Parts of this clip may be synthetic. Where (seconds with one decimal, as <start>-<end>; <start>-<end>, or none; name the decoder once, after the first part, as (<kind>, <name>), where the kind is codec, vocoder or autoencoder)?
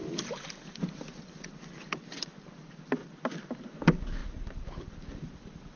0.0-1.3 (vocoder, BigVGAN v2); 4.2-5.1